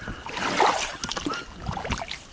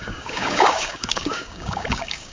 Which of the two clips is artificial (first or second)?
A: second